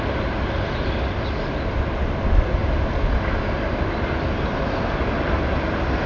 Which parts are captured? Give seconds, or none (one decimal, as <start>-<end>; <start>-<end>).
0.0-6.1